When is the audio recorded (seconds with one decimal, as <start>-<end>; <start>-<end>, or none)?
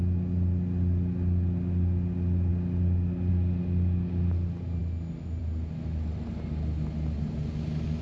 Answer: 0.0-8.0